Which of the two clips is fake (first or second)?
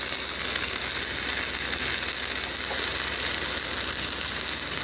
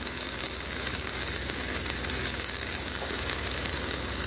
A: second